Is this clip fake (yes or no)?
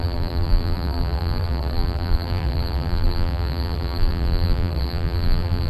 yes